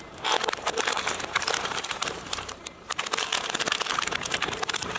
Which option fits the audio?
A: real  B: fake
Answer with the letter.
B